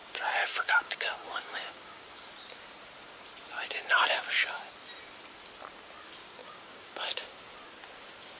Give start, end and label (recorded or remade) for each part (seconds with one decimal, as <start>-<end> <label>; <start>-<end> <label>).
0.0-0.4 recorded; 0.4-2.3 remade; 2.3-6.4 recorded; 6.4-7.2 remade; 7.2-8.4 recorded